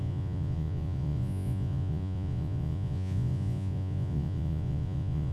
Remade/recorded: remade